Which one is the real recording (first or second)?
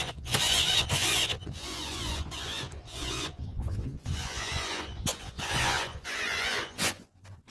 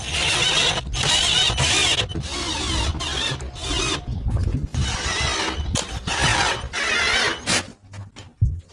second